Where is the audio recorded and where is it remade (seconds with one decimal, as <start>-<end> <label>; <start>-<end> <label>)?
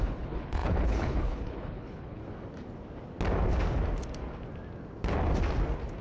0.0-2.2 remade; 2.2-6.0 recorded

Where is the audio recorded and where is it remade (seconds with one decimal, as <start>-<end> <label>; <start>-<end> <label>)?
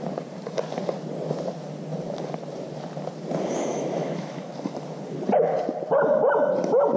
0.0-3.7 recorded; 3.7-4.5 remade; 4.5-7.0 recorded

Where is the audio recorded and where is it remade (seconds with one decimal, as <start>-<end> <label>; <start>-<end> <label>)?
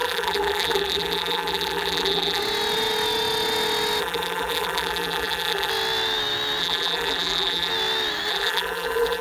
0.0-2.4 remade; 2.4-4.0 recorded; 4.0-5.7 remade; 5.7-6.6 recorded; 6.6-7.7 remade; 7.7-8.3 recorded; 8.3-9.2 remade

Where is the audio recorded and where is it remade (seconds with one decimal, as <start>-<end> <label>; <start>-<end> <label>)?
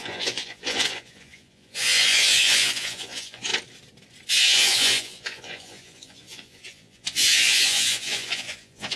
0.0-3.5 remade; 3.5-4.3 recorded; 4.3-9.0 remade